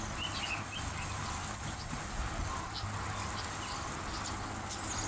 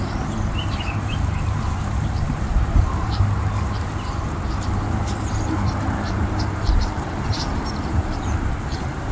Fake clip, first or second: second